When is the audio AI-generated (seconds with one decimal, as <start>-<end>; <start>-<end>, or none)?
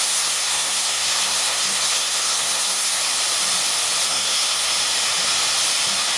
0.0-3.1; 4.1-4.7